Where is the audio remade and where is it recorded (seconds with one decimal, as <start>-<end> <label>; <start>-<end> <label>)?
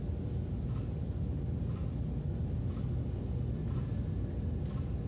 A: 0.0-5.1 recorded